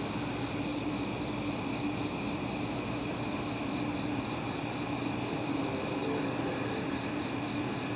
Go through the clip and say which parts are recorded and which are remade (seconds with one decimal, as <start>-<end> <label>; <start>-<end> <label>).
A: 0.0-6.0 recorded; 6.0-6.6 remade; 6.6-8.0 recorded